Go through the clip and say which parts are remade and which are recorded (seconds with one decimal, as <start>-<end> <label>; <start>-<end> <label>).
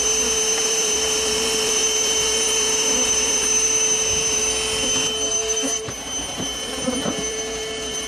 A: 0.0-4.4 remade; 4.4-5.3 recorded; 5.3-8.1 remade